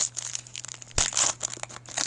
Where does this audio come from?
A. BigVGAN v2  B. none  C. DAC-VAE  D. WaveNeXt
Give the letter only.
B